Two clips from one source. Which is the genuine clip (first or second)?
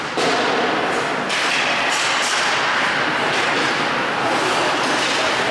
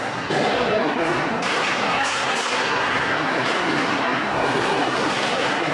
first